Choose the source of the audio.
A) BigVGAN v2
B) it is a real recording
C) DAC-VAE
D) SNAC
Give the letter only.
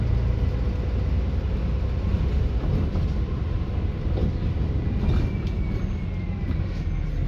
B